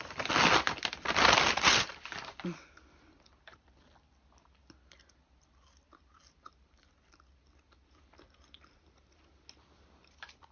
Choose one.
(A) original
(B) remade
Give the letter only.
A